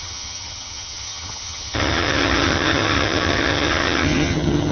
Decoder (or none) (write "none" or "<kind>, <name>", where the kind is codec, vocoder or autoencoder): vocoder, HiFi-GAN